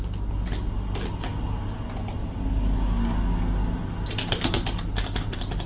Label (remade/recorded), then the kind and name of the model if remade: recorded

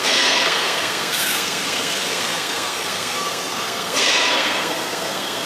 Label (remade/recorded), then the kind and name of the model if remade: remade, codec, SNAC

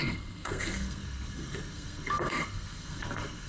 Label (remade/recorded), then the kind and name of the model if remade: remade, codec, SNAC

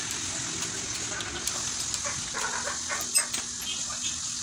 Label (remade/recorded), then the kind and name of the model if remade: recorded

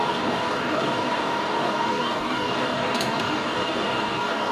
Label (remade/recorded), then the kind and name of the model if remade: remade, codec, DAC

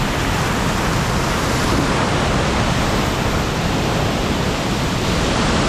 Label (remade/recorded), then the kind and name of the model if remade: recorded